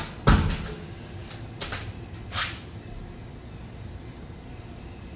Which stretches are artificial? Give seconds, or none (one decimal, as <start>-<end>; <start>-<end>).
1.2-2.6